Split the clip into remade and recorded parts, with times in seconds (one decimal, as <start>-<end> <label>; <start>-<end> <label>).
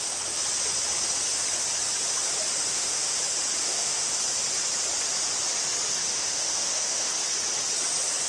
0.0-2.7 recorded; 2.7-3.2 remade; 3.2-3.6 recorded; 3.6-4.2 remade; 4.2-6.0 recorded; 6.0-7.1 remade; 7.1-8.3 recorded